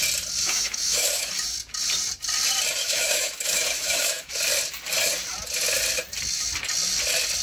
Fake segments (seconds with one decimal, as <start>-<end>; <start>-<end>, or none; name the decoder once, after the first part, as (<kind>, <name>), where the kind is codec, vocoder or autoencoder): 0.4-1.3 (autoencoder, DAC-VAE); 2.8-4.3